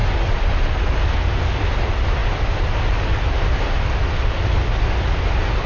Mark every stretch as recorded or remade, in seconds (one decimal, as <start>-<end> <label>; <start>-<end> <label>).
0.0-5.7 recorded